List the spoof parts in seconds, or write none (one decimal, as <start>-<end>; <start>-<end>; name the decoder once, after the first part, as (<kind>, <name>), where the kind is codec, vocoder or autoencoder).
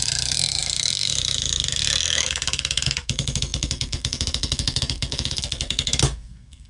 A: 0.0-6.7 (codec, SNAC)